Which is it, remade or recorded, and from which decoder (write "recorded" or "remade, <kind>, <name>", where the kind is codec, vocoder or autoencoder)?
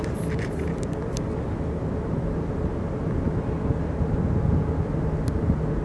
recorded